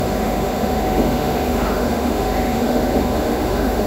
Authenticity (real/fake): fake